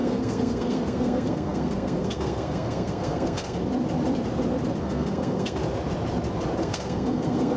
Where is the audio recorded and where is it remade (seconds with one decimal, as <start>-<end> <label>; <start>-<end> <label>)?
0.0-3.6 remade; 3.6-4.8 recorded; 4.8-5.6 remade; 5.6-6.6 recorded; 6.6-7.6 remade